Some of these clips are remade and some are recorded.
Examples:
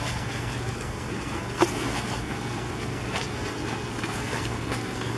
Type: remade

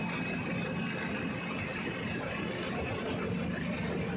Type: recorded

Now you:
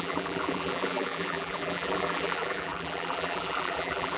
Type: remade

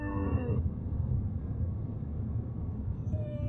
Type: remade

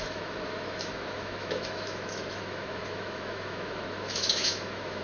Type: remade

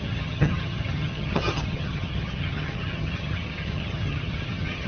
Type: remade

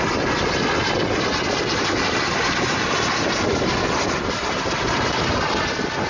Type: recorded